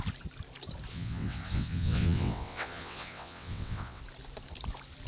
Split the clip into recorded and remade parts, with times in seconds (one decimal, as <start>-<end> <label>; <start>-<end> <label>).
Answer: 0.0-0.9 recorded; 0.9-4.0 remade; 4.0-5.1 recorded